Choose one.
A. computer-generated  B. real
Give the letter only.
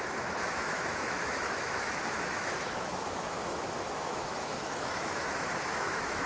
A